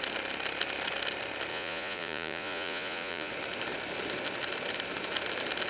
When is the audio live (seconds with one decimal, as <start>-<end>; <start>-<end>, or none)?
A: 0.0-1.5; 3.3-5.7